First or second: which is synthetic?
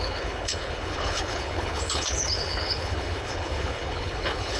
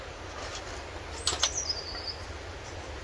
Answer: first